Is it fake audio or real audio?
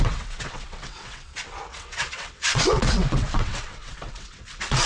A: fake